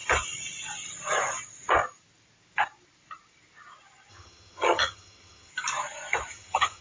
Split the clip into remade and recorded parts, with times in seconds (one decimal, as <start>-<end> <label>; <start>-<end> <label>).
0.0-4.1 recorded; 4.1-5.5 remade; 5.5-6.3 recorded; 6.3-6.8 remade